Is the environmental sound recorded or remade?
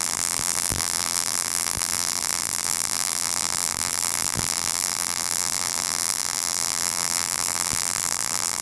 remade